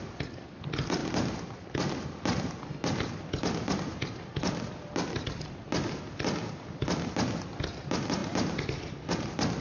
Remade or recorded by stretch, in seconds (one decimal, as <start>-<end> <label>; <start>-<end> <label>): 0.0-9.6 recorded